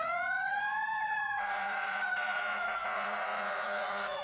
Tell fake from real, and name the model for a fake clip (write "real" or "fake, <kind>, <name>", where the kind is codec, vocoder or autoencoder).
fake, vocoder, Vocos